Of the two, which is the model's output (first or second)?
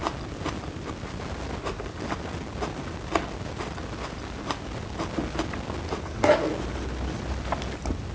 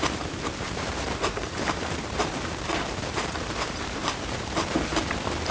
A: second